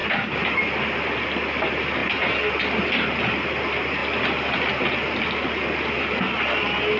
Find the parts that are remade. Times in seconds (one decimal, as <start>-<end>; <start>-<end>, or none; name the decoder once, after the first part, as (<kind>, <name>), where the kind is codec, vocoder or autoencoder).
none